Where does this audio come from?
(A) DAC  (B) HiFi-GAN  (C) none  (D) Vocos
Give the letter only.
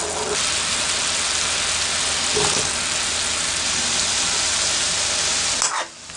C